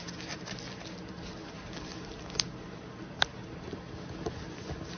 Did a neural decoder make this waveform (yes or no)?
no